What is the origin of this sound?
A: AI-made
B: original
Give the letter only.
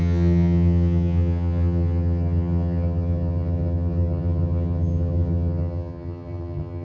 A